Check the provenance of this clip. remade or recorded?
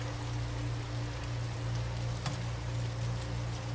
recorded